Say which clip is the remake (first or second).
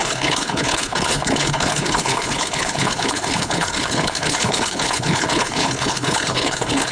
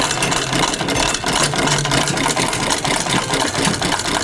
first